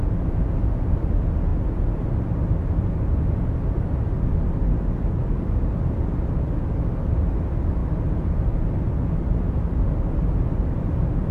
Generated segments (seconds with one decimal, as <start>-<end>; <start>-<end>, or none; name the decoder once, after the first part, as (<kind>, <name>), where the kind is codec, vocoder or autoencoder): none

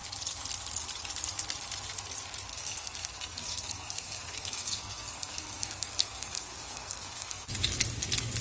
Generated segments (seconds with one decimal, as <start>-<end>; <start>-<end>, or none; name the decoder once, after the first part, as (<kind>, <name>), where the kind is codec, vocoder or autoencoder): 2.5-7.5 (codec, SNAC)

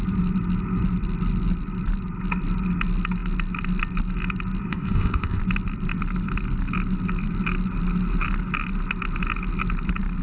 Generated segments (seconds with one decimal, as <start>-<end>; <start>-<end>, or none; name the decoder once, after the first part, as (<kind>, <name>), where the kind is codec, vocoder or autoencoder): 4.7-5.4 (codec, ZipCodec)